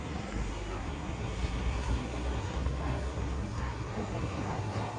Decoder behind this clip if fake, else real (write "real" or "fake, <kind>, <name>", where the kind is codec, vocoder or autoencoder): fake, codec, SNAC